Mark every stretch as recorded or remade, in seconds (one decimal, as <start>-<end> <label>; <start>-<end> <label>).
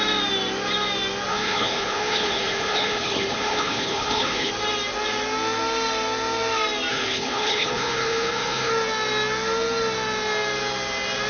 0.0-1.3 recorded; 1.3-4.5 remade; 4.5-6.9 recorded; 6.9-8.7 remade; 8.7-11.3 recorded